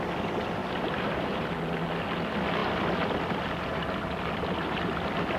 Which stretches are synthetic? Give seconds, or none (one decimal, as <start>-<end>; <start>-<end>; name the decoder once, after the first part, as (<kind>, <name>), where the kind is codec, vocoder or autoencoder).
0.6-1.6 (vocoder, BigVGAN v2)